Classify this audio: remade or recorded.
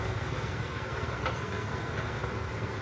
remade